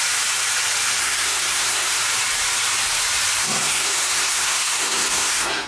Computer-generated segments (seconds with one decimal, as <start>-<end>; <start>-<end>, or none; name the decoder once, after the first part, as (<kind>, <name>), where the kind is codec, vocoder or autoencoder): 1.0-2.0 (codec, SNAC); 3.4-5.7